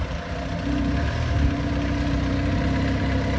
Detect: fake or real real